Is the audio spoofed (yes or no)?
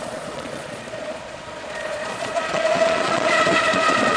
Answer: yes